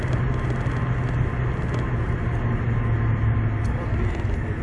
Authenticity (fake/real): real